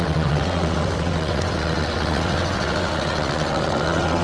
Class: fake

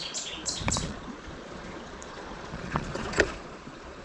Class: fake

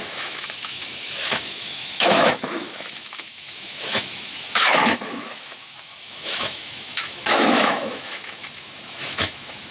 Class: fake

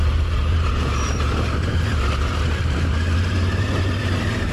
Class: fake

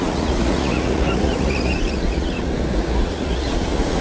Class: fake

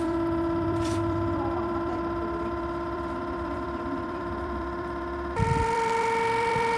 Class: fake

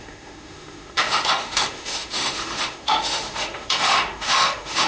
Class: fake